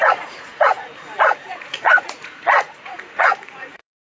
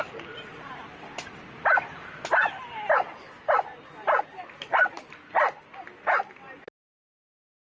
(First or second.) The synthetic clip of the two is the first